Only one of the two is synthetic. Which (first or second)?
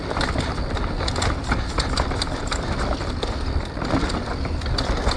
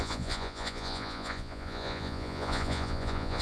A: second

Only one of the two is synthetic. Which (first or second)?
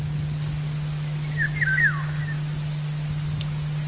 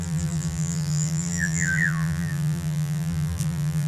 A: second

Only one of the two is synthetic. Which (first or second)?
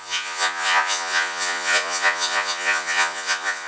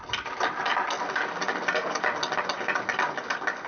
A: first